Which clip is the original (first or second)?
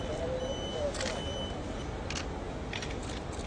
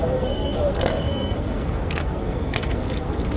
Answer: first